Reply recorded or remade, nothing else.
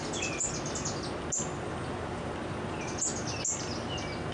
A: recorded